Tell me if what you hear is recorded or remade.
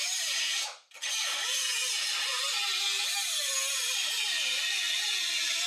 recorded